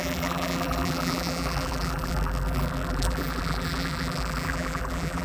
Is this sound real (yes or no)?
no